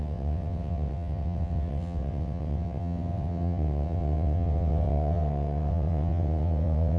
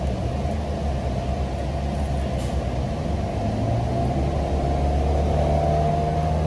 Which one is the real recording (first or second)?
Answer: second